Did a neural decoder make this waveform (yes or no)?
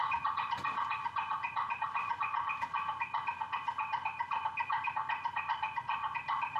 no